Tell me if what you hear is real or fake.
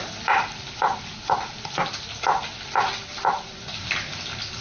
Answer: real